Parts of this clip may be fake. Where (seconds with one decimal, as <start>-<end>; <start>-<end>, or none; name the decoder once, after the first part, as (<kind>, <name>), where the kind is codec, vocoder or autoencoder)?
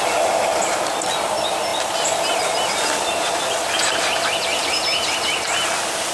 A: none